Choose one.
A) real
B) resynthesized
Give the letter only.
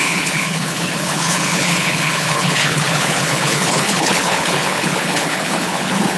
B